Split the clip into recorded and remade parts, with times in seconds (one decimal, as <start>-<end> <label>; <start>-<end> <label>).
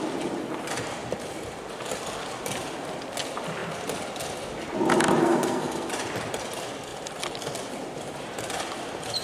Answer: 0.0-5.2 recorded; 5.2-5.9 remade; 5.9-9.2 recorded